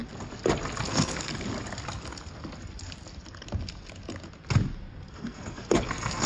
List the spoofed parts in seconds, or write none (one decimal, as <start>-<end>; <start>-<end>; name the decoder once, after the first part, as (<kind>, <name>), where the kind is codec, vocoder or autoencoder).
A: 0.9-1.3 (codec, SNAC); 5.1-6.3